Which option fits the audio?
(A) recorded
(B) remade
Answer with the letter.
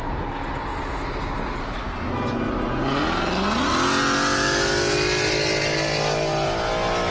A